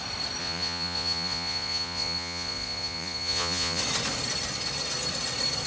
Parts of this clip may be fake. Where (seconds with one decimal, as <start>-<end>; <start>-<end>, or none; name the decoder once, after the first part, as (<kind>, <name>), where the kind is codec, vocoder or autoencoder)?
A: 0.4-3.8 (vocoder, Vocos)